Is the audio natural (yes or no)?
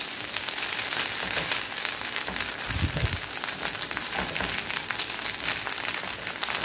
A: yes